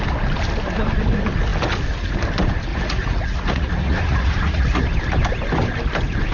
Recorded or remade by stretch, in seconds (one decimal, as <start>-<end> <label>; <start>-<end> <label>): 0.0-2.7 recorded; 2.7-4.8 remade; 4.8-6.3 recorded